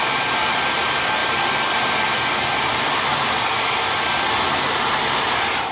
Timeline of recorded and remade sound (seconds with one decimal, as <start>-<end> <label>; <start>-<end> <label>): 0.0-5.7 recorded